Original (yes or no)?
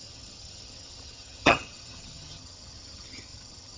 no